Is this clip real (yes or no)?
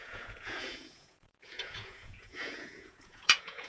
no